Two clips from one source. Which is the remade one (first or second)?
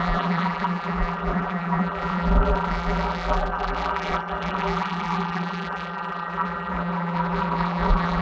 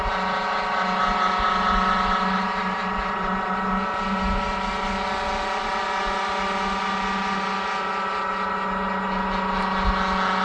first